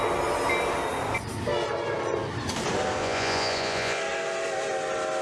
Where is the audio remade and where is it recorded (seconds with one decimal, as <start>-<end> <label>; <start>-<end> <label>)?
0.0-3.0 recorded; 3.0-4.0 remade; 4.0-5.2 recorded